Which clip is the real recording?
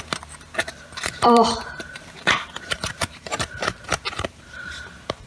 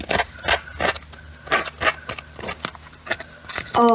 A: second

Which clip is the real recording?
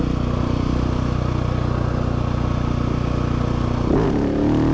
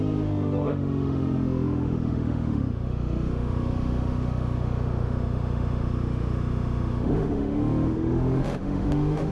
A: first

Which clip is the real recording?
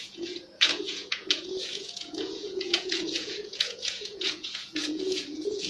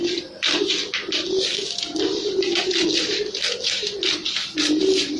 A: second